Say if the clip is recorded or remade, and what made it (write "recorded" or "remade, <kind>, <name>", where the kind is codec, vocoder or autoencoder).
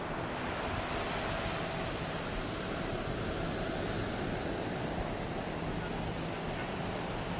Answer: recorded